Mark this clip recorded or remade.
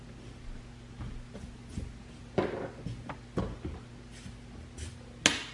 recorded